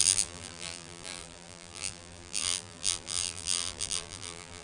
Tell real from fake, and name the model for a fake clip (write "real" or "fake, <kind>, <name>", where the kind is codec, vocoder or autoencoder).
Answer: fake, vocoder, BigVGAN v2